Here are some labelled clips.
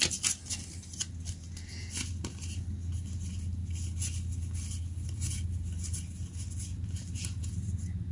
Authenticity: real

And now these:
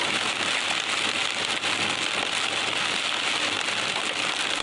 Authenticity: real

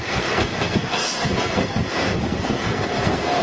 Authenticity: fake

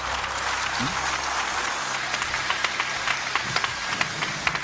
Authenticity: real